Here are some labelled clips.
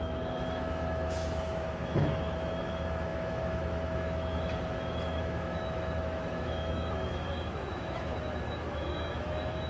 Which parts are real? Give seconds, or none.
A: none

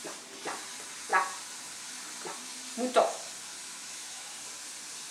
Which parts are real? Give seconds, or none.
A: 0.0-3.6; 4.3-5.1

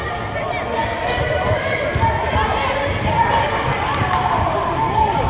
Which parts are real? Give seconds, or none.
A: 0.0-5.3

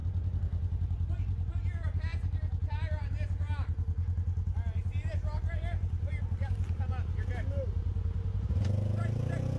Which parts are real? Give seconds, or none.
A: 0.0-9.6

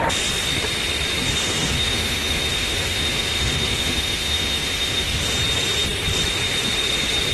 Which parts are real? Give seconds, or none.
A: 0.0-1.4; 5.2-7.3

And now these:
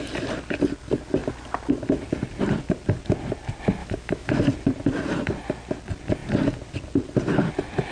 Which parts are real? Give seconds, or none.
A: 0.0-3.8; 4.4-7.9